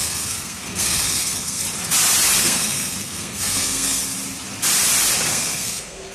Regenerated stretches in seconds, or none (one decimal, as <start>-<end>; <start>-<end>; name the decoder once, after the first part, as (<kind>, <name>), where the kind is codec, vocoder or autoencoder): 0.0-1.6 (codec, SNAC); 2.4-4.0; 5.3-6.1